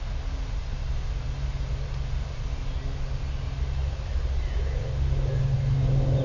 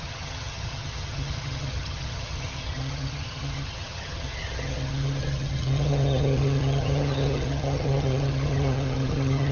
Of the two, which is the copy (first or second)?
second